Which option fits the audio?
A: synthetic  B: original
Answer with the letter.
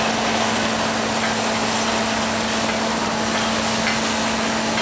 B